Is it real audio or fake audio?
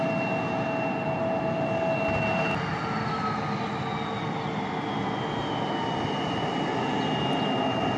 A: real